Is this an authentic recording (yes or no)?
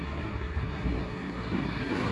no